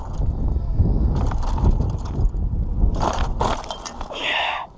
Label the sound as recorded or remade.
recorded